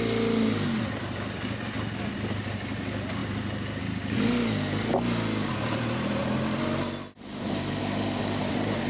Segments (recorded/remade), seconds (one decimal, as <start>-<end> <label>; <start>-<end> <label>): 0.0-6.2 recorded; 6.2-7.8 remade; 7.8-8.9 recorded